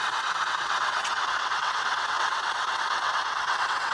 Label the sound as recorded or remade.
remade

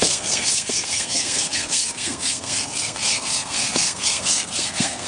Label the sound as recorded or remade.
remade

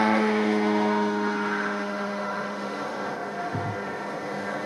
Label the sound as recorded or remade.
remade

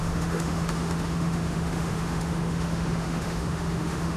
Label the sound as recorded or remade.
remade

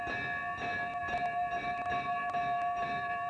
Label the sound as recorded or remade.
recorded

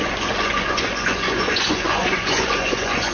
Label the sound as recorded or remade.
remade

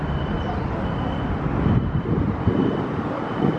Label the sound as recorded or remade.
recorded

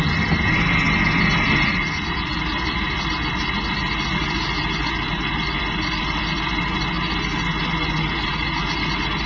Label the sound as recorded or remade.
recorded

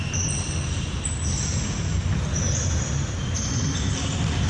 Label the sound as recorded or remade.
recorded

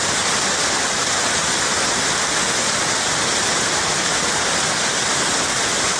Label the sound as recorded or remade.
recorded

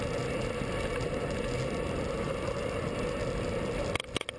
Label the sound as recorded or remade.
recorded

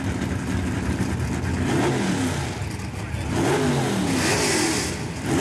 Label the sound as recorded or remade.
recorded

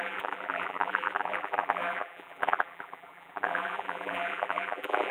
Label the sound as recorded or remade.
remade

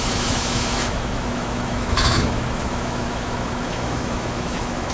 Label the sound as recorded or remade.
remade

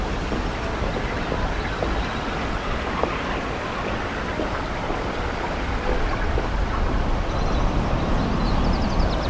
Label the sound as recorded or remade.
recorded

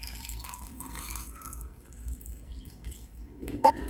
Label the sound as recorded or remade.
remade